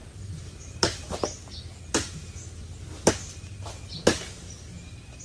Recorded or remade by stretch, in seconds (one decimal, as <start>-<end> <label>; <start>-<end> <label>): 0.0-5.2 recorded

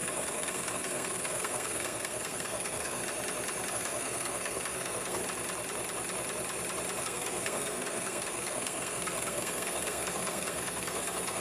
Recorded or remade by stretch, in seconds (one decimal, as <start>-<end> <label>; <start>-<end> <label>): 0.0-3.0 remade; 3.0-3.7 recorded; 3.7-5.2 remade; 5.2-7.0 recorded; 7.0-11.4 remade

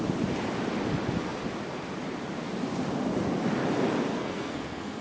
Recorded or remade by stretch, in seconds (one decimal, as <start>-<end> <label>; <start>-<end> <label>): 0.0-4.1 recorded; 4.1-5.0 remade

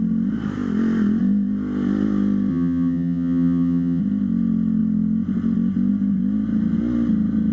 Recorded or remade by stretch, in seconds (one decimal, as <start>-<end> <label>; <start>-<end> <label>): 0.0-2.5 recorded; 2.5-4.0 remade; 4.0-7.5 recorded

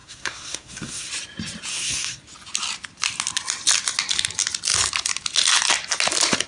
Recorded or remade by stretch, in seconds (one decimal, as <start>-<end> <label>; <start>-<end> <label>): 0.0-1.1 remade; 1.1-1.7 recorded; 1.7-2.2 remade; 2.2-6.5 recorded

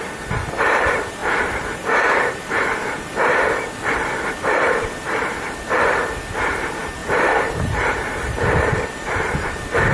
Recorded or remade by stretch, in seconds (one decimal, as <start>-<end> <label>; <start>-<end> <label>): 0.0-1.2 recorded; 1.2-2.6 remade; 2.6-7.0 recorded; 7.0-9.9 remade